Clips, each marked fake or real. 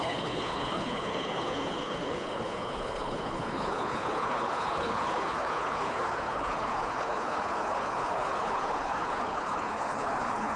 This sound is fake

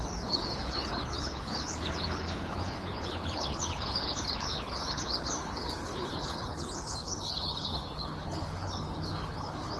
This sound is fake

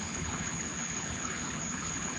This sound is fake